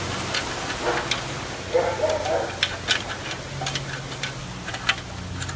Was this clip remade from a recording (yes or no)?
no